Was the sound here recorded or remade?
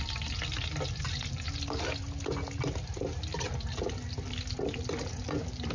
recorded